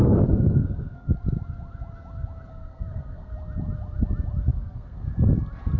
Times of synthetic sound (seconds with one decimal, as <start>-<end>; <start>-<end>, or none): 0.0-1.1; 2.5-3.3; 4.5-5.1